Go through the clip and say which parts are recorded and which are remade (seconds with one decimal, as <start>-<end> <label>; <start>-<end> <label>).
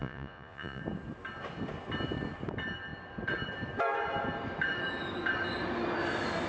0.0-0.8 remade; 0.8-6.5 recorded